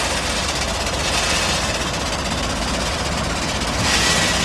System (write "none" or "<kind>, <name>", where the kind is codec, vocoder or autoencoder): none